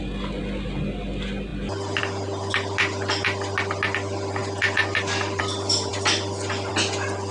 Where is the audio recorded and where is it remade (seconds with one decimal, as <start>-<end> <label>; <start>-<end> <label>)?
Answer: 0.0-4.4 recorded; 4.4-5.4 remade; 5.4-7.3 recorded